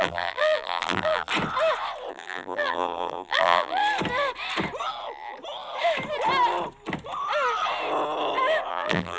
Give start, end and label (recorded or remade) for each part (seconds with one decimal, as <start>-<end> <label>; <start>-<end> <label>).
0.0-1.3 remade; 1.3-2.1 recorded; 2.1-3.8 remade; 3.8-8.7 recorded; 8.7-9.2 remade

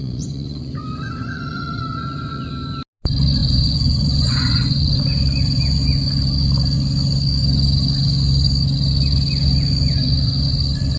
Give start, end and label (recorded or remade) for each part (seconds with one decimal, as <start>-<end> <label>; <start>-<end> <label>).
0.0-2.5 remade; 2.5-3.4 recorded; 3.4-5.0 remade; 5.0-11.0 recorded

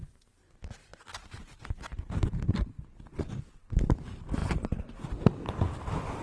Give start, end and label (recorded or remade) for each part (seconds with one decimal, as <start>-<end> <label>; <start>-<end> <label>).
0.0-6.2 recorded

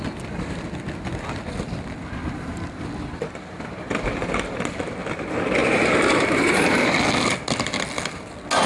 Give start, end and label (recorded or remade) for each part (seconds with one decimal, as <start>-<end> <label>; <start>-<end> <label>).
0.0-5.6 recorded; 5.6-6.9 remade; 6.9-8.7 recorded